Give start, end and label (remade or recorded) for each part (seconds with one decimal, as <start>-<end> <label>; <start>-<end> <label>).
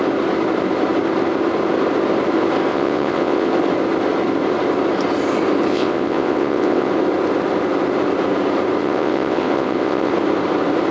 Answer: 0.0-2.7 recorded; 2.7-3.5 remade; 3.5-5.7 recorded; 5.7-6.9 remade; 6.9-8.8 recorded; 8.8-10.1 remade; 10.1-10.9 recorded